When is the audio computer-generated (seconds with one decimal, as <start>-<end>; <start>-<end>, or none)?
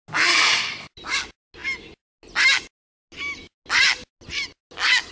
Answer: none